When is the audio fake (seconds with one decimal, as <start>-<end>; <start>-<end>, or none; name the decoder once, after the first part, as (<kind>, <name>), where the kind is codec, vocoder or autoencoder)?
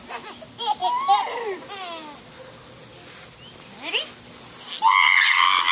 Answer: none